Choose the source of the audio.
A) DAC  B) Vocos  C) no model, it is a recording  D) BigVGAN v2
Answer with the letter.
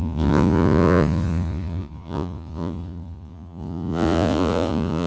B